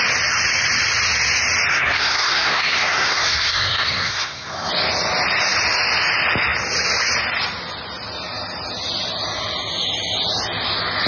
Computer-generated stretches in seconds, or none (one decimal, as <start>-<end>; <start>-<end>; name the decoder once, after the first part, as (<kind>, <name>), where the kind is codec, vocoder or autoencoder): 1.7-4.7 (codec, SNAC)